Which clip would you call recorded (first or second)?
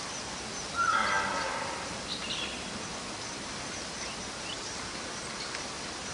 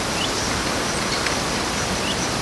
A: second